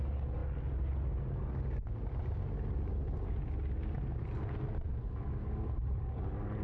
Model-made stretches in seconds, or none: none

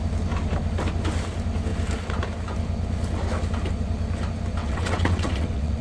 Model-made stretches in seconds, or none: 4.6-5.8

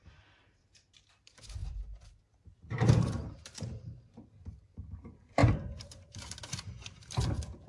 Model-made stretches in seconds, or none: 0.0-7.7

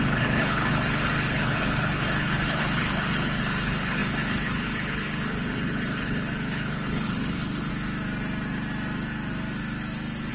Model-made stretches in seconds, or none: 0.0-7.7